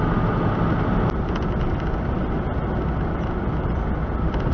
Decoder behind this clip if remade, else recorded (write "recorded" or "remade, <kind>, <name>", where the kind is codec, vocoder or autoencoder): recorded